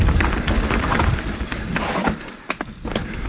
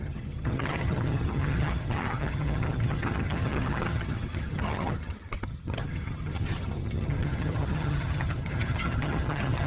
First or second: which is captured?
first